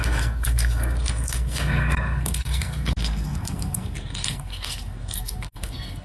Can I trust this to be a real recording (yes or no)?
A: no